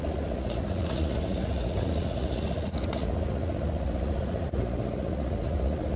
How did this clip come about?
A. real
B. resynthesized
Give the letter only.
B